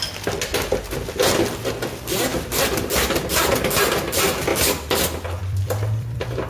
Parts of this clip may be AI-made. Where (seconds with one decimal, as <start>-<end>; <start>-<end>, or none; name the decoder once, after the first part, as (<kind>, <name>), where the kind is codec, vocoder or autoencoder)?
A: 2.3-3.5 (vocoder, BigVGAN v2); 4.5-5.0; 5.4-6.5